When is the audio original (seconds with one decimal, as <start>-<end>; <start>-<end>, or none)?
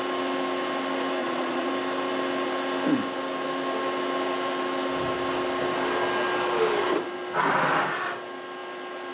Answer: 0.0-1.2; 1.7-9.1